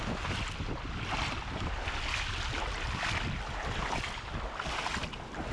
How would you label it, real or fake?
real